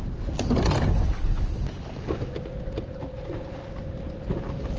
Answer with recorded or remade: recorded